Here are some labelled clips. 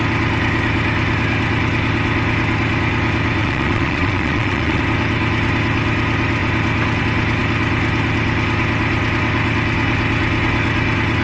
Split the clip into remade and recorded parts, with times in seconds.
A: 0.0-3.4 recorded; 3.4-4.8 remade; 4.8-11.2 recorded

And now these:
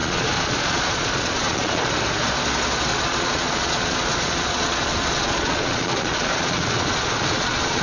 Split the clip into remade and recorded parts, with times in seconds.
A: 0.0-1.9 remade; 1.9-2.9 recorded; 2.9-7.8 remade

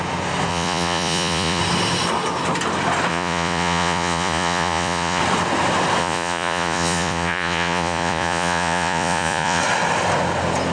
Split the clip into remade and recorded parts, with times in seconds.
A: 0.0-0.5 recorded; 0.5-1.6 remade; 1.6-3.1 recorded; 3.1-5.2 remade; 5.2-6.0 recorded; 6.0-9.6 remade; 9.6-10.7 recorded

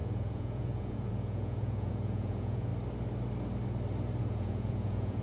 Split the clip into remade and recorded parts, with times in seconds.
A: 0.0-2.7 remade; 2.7-4.2 recorded; 4.2-5.2 remade